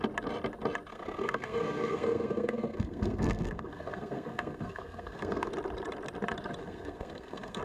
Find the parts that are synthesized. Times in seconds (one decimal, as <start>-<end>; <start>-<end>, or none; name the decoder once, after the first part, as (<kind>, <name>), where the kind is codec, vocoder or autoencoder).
0.9-5.5 (codec, SNAC); 6.6-7.6